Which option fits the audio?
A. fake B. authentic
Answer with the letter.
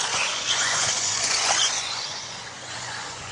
A